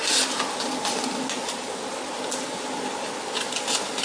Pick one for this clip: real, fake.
real